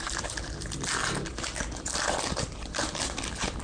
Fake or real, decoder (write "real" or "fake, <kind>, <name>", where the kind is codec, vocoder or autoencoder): real